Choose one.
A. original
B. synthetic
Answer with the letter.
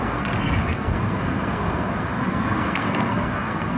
B